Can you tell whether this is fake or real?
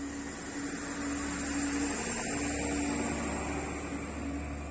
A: real